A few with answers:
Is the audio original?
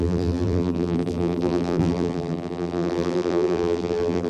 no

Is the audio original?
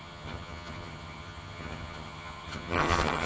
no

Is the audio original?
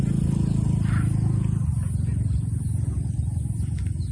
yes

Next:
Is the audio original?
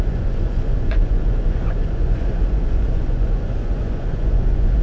no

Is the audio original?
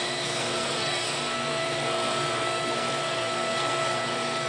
no